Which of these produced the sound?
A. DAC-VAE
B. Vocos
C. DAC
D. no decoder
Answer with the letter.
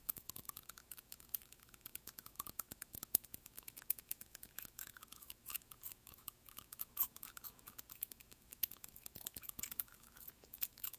A